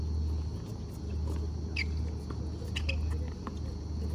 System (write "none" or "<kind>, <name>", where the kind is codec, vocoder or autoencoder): none